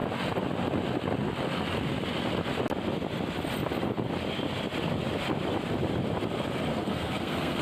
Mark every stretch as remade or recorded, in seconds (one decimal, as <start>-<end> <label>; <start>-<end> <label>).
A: 0.0-6.7 recorded; 6.7-7.6 remade